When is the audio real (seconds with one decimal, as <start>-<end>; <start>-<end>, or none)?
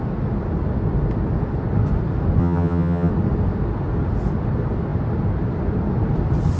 0.0-2.4; 3.1-6.6